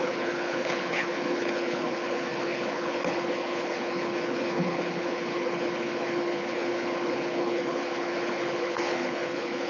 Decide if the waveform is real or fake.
fake